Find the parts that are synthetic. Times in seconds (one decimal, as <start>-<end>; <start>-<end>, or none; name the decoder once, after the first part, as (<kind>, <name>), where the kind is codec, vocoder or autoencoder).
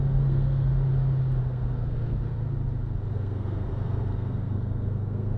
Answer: 0.0-0.7 (codec, SNAC); 1.4-2.3; 3.1-5.4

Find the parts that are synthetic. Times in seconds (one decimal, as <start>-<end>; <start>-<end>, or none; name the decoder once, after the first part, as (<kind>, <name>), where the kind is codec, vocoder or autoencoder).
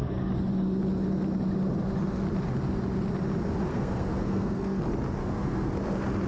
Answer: 3.7-4.8 (codec, SNAC); 5.2-5.7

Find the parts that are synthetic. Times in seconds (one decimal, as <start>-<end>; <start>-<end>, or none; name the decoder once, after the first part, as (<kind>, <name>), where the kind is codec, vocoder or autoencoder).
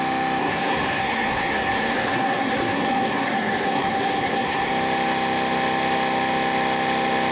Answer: 0.4-4.7 (codec, SNAC)